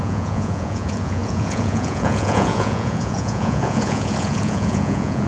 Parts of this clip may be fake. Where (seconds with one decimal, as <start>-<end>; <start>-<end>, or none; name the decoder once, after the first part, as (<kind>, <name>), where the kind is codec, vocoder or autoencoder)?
0.0-5.3 (vocoder, Vocos)

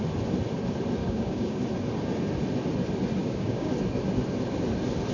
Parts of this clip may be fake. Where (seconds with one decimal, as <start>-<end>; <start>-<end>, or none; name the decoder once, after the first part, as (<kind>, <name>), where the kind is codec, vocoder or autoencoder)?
1.0-1.6 (codec, DAC); 3.2-3.7

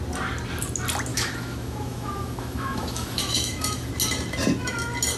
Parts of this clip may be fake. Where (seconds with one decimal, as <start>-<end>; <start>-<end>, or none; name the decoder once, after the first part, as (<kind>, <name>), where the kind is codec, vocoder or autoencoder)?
1.1-3.9 (autoencoder, DAC-VAE)